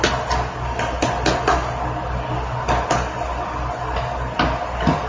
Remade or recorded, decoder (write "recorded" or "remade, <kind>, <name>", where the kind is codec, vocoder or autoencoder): recorded